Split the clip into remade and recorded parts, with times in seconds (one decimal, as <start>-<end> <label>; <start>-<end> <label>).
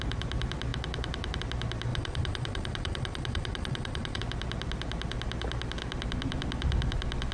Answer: 0.0-1.9 recorded; 1.9-4.2 remade; 4.2-7.3 recorded